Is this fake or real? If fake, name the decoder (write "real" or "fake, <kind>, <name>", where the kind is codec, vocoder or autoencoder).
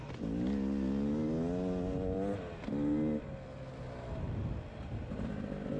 real